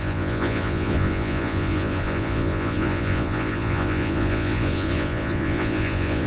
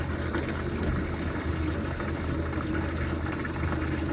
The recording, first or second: second